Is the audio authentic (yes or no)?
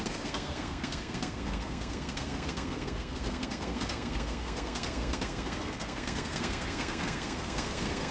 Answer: no